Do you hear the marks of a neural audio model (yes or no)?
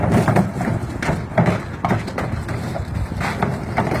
no